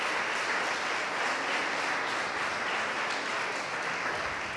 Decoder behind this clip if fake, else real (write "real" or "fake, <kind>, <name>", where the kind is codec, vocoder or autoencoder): real